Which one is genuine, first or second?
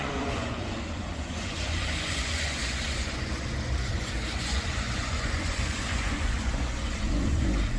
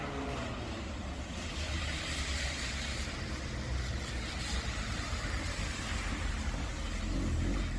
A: second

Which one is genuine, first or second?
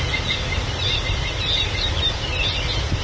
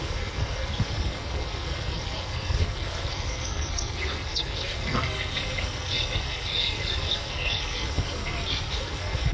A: first